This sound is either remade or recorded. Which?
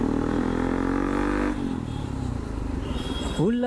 recorded